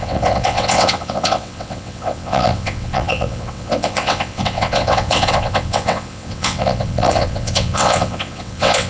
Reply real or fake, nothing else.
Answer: fake